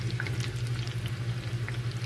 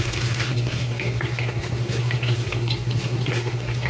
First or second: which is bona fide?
first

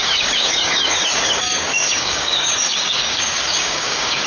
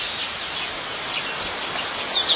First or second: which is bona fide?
second